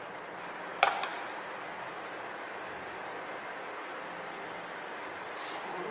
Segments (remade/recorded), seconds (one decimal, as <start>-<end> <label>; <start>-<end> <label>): 0.0-5.9 recorded